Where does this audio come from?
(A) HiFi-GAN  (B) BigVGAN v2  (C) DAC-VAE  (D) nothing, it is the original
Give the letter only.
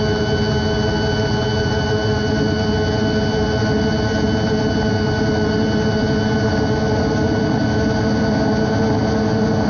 D